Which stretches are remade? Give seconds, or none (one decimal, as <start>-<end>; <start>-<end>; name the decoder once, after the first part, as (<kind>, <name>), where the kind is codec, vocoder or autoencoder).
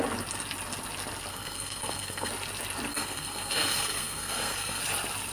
1.3-2.3 (codec, SNAC); 2.9-4.8